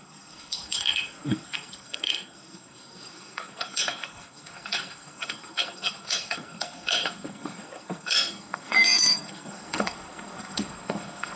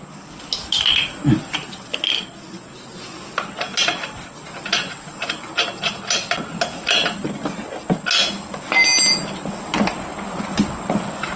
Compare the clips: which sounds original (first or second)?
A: second